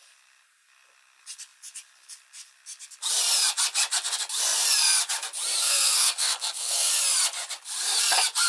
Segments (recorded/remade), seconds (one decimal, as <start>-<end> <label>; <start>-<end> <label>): 0.0-5.6 recorded; 5.6-6.9 remade; 6.9-8.5 recorded